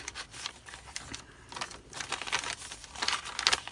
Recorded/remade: recorded